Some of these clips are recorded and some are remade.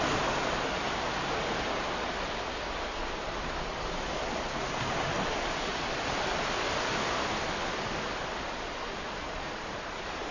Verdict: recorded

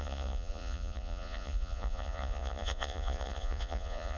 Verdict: remade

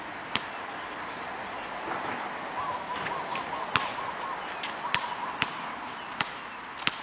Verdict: recorded